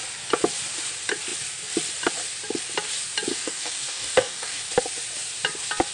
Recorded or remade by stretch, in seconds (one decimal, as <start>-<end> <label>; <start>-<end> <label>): 0.0-3.3 recorded; 3.3-4.6 remade; 4.6-5.9 recorded